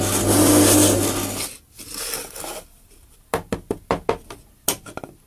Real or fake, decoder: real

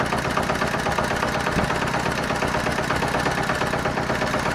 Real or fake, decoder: real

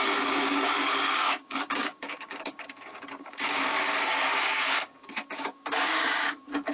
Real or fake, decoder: fake, codec, DAC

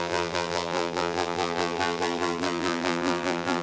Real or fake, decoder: fake, vocoder, BigVGAN v2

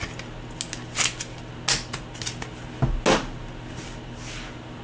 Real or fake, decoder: real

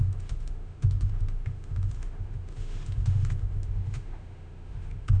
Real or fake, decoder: fake, autoencoder, DAC-VAE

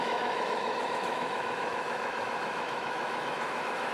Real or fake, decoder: fake, autoencoder, DAC-VAE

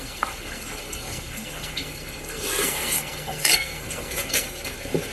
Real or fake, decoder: fake, codec, SNAC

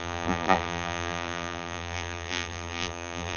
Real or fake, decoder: fake, vocoder, BigVGAN v2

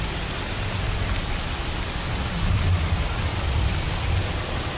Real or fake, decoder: real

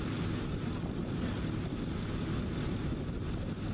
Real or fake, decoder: real